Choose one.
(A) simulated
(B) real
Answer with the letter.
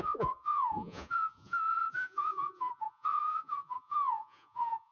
A